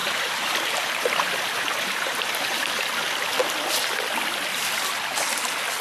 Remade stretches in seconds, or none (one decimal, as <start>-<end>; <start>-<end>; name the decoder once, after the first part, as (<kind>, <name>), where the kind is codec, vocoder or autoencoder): 0.0-2.8 (vocoder, BigVGAN v2)